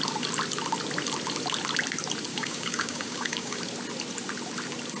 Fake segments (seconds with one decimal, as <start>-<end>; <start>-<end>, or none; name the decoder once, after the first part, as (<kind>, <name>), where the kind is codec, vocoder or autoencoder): 2.3-3.6 (codec, DAC)